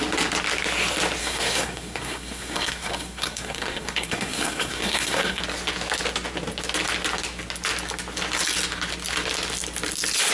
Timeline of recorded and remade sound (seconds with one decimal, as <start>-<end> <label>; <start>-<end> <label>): 0.0-1.2 recorded; 1.2-5.4 remade; 5.4-10.3 recorded